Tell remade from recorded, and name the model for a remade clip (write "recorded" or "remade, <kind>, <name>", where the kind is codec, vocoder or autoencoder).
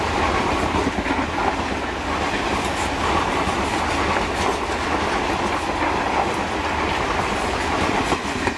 recorded